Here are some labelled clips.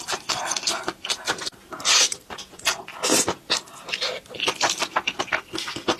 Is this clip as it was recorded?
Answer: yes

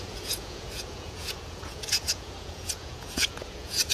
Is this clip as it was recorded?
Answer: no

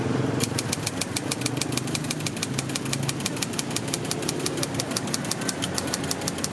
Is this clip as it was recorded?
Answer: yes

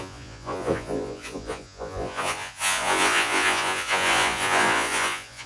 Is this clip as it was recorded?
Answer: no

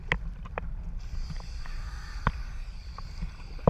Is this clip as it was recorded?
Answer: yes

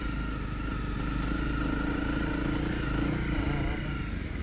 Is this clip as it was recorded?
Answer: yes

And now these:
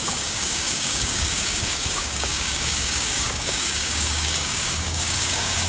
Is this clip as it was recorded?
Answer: no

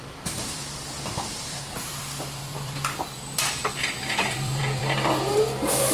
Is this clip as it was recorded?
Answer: no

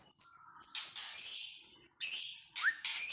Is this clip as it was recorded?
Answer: yes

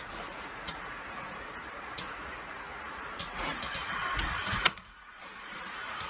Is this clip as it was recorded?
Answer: no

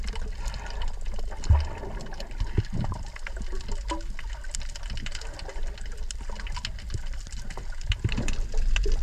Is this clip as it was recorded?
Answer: yes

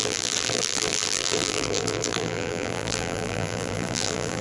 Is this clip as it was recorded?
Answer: no